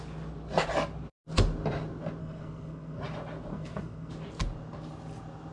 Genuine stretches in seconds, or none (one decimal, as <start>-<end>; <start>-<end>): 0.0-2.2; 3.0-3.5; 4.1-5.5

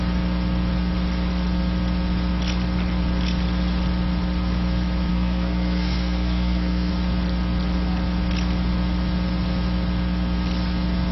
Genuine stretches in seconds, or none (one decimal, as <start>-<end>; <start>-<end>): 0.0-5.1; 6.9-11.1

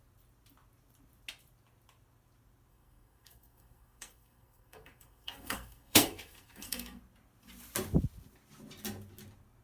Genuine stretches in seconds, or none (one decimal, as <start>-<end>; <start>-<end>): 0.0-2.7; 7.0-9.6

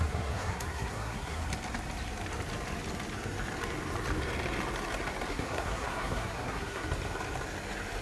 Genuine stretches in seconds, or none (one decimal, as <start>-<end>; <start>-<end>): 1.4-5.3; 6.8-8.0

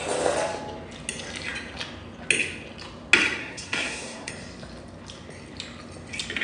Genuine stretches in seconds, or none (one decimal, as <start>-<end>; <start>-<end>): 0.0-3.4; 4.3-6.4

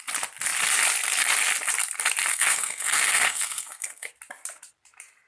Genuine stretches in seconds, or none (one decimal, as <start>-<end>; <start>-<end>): 0.0-2.3; 4.1-5.3